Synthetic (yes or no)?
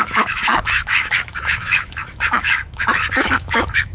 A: yes